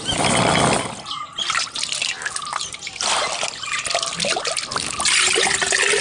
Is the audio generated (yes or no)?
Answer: no